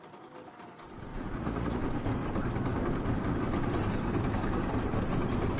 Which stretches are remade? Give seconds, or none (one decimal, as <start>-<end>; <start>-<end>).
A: 1.1-1.8